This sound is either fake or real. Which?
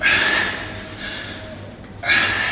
real